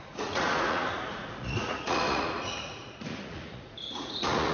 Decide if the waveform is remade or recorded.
remade